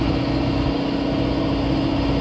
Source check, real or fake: real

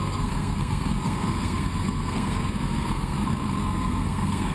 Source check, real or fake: fake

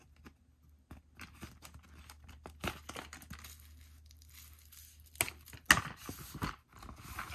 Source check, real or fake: real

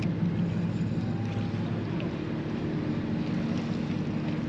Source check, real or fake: real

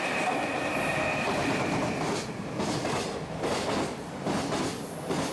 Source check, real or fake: real